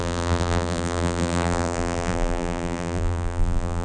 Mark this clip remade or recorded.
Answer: remade